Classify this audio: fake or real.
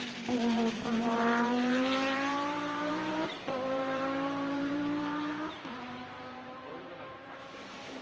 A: fake